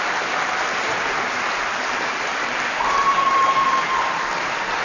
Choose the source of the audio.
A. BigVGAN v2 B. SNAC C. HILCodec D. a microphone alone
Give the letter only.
A